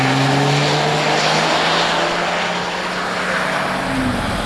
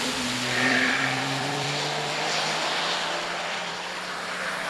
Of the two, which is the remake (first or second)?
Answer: second